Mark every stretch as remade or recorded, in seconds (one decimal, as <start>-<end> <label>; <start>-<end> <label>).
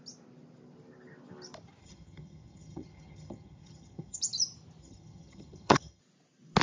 0.0-1.8 recorded; 1.8-4.2 remade; 4.2-4.8 recorded; 4.8-6.0 remade; 6.0-6.6 recorded